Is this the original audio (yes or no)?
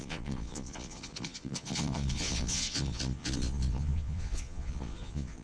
no